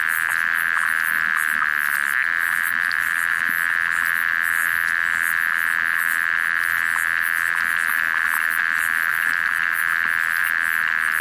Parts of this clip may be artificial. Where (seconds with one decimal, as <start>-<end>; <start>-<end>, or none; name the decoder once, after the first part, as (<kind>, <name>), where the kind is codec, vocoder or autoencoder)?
2.5-3.4 (vocoder, BigVGAN v2); 9.1-9.8